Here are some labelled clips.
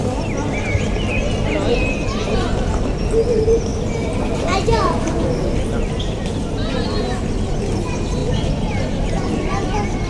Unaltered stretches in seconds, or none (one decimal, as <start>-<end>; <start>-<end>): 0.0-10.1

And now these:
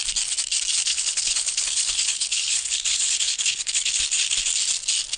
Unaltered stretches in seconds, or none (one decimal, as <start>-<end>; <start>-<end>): 0.0-0.9; 4.0-5.2

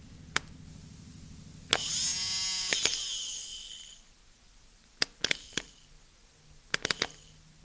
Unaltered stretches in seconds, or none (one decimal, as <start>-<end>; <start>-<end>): 0.0-7.6

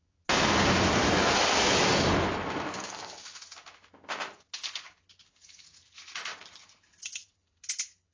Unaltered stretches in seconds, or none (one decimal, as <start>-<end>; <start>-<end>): 0.0-1.0; 1.9-8.1

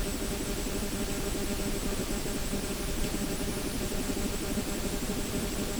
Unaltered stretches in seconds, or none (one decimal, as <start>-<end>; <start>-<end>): 0.0-2.4; 5.3-5.8

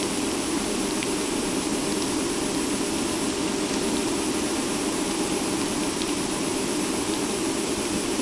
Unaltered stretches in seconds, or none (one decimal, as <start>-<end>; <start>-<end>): 1.7-4.6